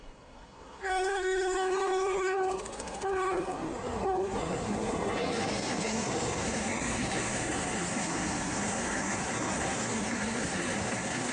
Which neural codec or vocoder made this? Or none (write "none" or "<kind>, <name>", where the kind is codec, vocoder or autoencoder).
codec, SNAC